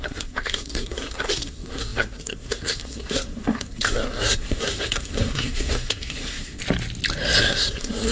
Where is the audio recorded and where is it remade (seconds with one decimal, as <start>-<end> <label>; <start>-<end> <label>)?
0.0-6.6 remade; 6.6-7.4 recorded; 7.4-8.1 remade